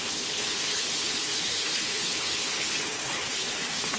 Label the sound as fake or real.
fake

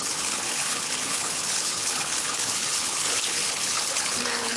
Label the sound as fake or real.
fake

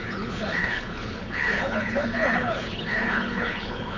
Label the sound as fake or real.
fake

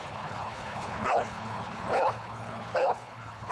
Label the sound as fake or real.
fake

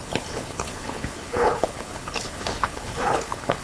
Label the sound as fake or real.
fake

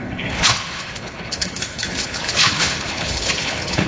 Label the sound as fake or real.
fake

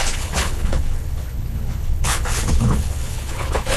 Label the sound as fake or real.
fake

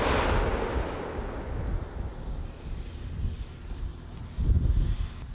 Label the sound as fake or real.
real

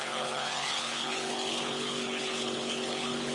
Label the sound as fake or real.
fake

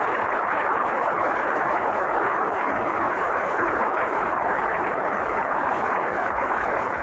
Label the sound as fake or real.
fake